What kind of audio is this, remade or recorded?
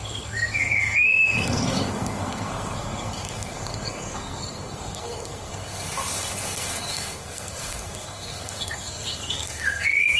remade